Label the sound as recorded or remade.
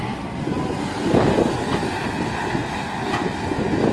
recorded